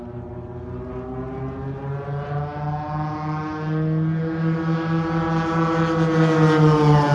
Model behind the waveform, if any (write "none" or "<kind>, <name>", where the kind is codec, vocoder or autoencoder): none